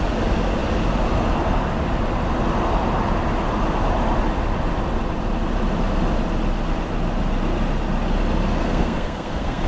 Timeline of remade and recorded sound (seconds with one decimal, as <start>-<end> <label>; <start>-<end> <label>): 0.0-8.6 recorded; 8.6-9.7 remade

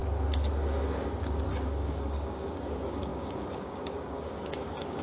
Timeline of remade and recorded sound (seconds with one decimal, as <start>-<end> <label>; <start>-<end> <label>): 0.0-1.5 recorded; 1.5-5.0 remade

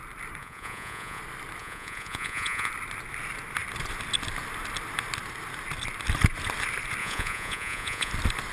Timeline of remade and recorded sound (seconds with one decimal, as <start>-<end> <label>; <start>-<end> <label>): 0.0-0.4 recorded; 0.4-1.2 remade; 1.2-1.6 recorded; 1.6-2.7 remade; 2.7-7.0 recorded; 7.0-8.1 remade; 8.1-8.5 recorded

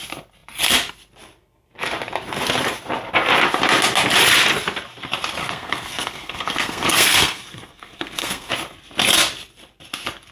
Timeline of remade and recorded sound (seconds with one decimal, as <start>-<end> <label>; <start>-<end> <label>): 0.0-5.4 recorded; 5.4-8.5 remade; 8.5-10.3 recorded

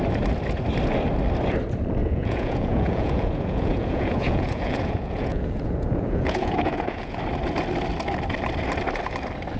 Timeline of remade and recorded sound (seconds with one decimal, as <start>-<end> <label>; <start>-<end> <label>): 0.0-2.0 recorded; 2.0-7.2 remade; 7.2-9.6 recorded

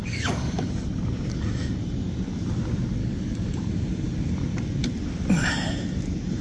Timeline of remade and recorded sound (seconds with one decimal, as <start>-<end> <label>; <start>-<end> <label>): 0.0-0.7 remade; 0.7-3.0 recorded; 3.0-3.6 remade; 3.6-6.4 recorded